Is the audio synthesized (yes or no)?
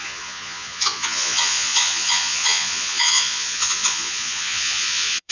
yes